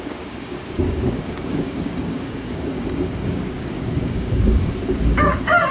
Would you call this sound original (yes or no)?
no